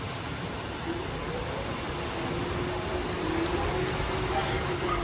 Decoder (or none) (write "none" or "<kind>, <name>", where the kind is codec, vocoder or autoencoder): none